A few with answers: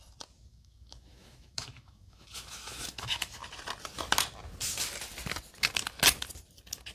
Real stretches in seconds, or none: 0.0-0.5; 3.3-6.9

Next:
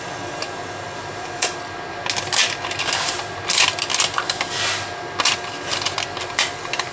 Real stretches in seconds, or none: 0.0-6.9

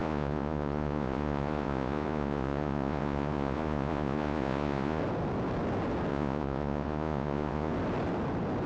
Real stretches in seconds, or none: 5.0-6.1; 7.7-8.7